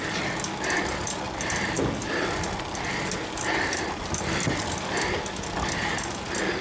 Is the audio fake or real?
real